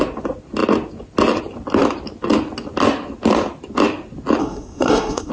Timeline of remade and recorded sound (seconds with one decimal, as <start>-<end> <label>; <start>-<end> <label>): 0.0-4.4 recorded; 4.4-5.3 remade